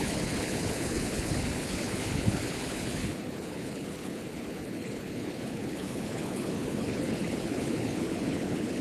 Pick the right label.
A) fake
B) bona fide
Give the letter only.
A